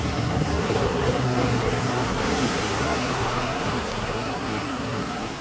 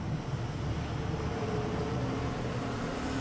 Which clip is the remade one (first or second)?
first